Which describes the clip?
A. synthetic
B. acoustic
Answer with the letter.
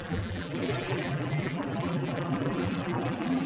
A